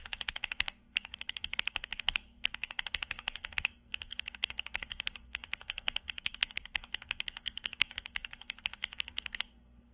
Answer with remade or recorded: remade